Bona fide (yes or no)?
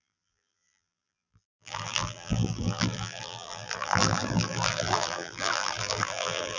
no